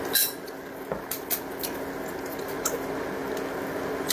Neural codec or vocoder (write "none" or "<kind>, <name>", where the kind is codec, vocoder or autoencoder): none